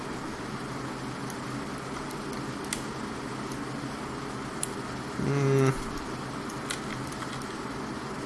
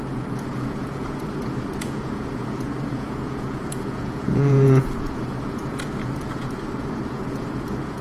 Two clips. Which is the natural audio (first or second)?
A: first